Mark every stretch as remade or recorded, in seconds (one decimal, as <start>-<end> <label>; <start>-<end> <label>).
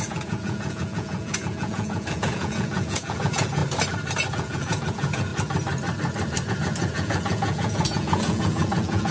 0.0-3.6 remade; 3.6-4.3 recorded; 4.3-5.3 remade; 5.3-6.5 recorded; 6.5-9.1 remade